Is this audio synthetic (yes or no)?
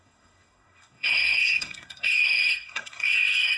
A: yes